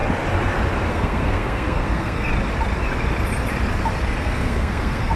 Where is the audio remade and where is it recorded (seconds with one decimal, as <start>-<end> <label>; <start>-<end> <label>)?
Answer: 0.0-0.9 recorded; 0.9-2.3 remade; 2.3-4.2 recorded; 4.2-5.2 remade